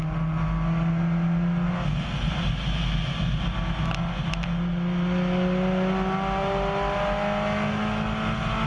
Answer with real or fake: real